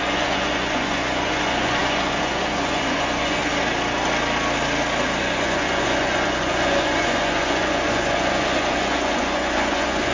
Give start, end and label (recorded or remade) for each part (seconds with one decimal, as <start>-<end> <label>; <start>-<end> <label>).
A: 0.0-3.4 remade; 3.4-5.2 recorded; 5.2-10.1 remade